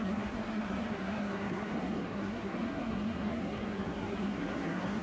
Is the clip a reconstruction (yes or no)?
yes